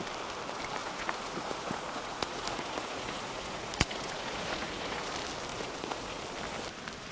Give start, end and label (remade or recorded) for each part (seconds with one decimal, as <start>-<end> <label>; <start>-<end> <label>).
0.0-0.8 recorded; 0.8-5.1 remade; 5.1-5.5 recorded; 5.5-6.2 remade; 6.2-7.1 recorded